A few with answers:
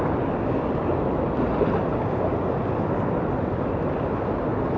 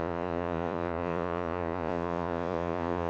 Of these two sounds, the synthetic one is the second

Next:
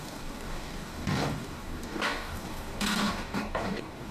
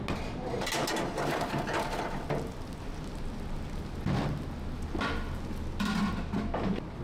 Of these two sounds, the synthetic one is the first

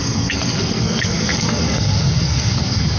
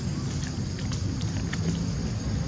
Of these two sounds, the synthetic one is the first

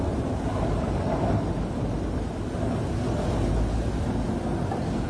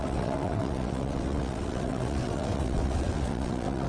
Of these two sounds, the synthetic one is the second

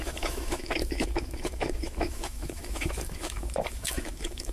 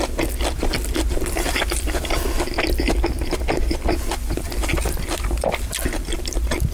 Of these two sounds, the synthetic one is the first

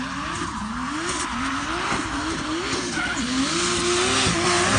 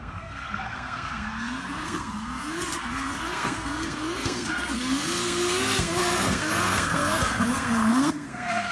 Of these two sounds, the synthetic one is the second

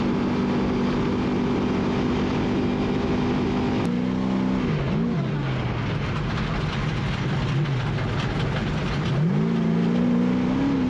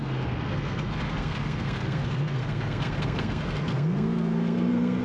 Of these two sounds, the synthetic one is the second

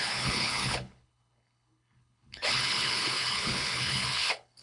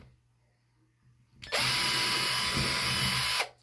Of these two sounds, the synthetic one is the first